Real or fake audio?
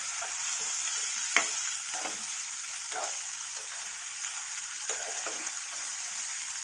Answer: real